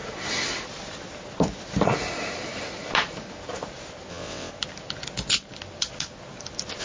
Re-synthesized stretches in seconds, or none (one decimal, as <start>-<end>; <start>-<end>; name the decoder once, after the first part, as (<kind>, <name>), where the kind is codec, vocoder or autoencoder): 4.1-4.5 (vocoder, WaveNeXt)